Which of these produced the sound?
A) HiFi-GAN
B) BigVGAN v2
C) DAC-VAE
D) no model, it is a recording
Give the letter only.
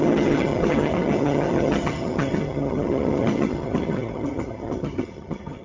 A